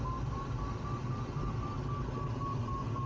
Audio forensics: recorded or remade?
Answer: recorded